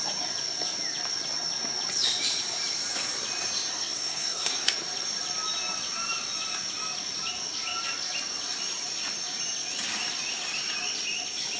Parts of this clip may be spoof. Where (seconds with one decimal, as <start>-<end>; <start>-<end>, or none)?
3.7-4.5